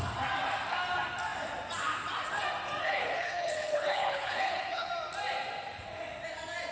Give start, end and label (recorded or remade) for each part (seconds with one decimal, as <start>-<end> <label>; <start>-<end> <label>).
0.0-2.8 recorded; 2.8-4.9 remade; 4.9-6.7 recorded